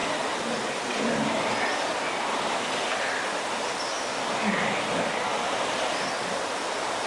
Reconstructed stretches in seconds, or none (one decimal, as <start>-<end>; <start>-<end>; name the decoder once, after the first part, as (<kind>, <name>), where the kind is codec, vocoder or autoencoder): none